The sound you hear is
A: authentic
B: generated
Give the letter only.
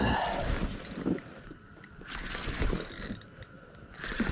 A